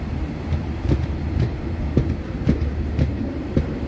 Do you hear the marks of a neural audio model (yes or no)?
yes